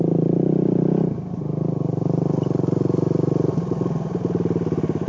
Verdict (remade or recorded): recorded